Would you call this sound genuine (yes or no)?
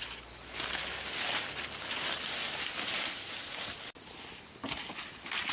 yes